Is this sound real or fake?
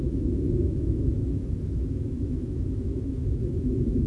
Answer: fake